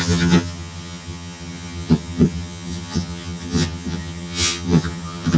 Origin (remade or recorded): remade